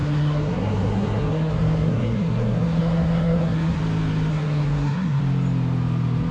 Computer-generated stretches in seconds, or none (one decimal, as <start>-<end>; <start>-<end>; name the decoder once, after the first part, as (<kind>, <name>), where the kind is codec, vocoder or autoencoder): 0.0-3.8 (codec, SNAC); 4.3-5.2